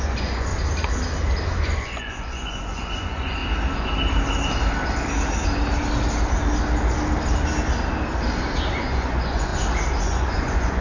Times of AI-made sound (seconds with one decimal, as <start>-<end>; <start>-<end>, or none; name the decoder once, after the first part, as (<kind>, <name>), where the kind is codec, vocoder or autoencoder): 0.0-0.5 (vocoder, Vocos); 1.6-3.4; 8.7-9.5; 10.0-10.8